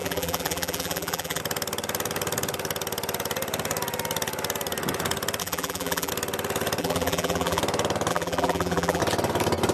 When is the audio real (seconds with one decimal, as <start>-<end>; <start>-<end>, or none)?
1.4-5.4; 6.1-6.8; 7.6-8.1; 9.0-9.7